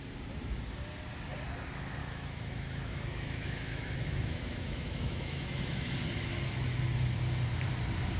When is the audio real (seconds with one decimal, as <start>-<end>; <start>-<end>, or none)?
0.0-2.0; 5.9-8.2